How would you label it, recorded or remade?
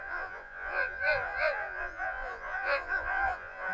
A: remade